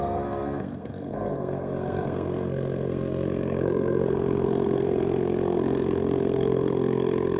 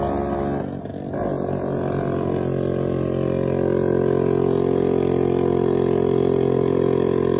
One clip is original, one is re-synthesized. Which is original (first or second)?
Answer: second